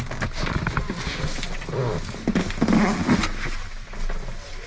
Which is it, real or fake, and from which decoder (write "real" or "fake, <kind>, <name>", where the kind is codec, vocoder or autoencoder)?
real